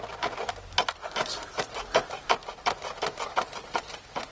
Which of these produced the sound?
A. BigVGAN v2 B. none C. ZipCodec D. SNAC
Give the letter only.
B